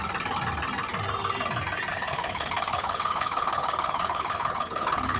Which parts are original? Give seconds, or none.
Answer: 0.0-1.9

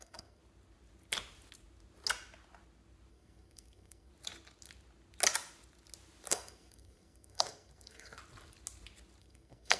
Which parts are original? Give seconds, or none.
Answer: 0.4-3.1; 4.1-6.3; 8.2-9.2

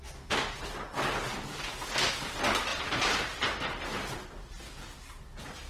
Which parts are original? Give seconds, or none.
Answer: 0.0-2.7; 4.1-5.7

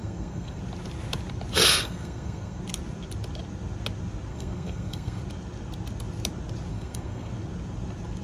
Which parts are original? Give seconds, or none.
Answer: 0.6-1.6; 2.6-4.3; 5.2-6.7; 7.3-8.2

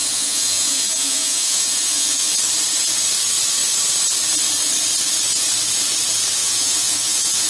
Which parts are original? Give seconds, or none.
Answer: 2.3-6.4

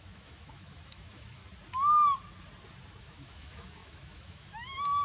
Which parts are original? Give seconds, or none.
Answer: 1.4-3.0